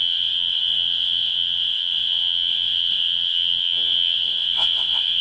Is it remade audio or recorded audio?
remade